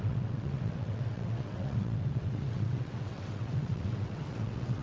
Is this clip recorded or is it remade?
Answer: remade